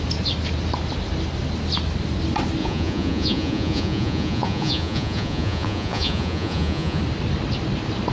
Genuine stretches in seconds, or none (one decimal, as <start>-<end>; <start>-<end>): 0.0-2.6; 7.0-8.1